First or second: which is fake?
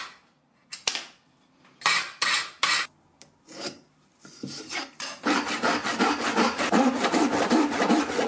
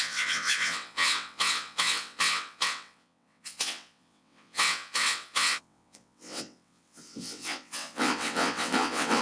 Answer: second